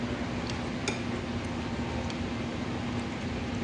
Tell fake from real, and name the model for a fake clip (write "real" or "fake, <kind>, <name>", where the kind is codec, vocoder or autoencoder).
real